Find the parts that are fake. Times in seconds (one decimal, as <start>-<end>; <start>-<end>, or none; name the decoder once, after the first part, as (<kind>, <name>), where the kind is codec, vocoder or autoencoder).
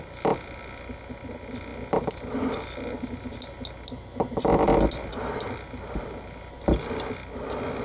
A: none